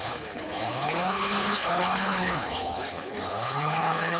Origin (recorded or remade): remade